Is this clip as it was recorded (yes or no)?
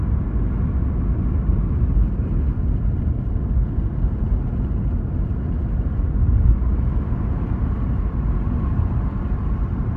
yes